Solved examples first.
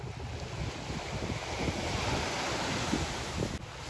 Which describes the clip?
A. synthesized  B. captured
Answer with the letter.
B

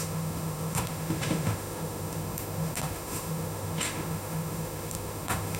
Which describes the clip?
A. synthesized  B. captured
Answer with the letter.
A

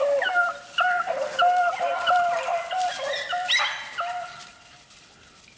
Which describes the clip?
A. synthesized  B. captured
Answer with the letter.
B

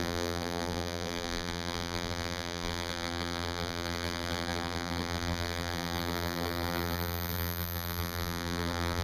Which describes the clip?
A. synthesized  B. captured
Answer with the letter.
A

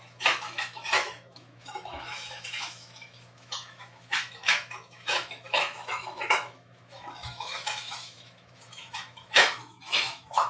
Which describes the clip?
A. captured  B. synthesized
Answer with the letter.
B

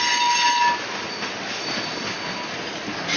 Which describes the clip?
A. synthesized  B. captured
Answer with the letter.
B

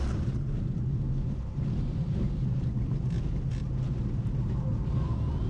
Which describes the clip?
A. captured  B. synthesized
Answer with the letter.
A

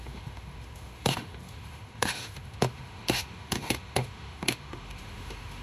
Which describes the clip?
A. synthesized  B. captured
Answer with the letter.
A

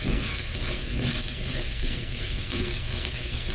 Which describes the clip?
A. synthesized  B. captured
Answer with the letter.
A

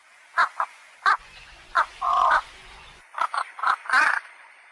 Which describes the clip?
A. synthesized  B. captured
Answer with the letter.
A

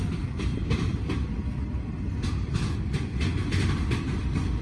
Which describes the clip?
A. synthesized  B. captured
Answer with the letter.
B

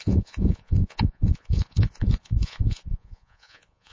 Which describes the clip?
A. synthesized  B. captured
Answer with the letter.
A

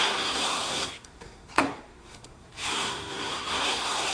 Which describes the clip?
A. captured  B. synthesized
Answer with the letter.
B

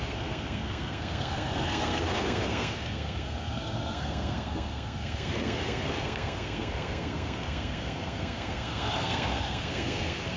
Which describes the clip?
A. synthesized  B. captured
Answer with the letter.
A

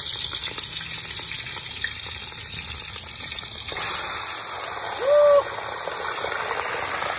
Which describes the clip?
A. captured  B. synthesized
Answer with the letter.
A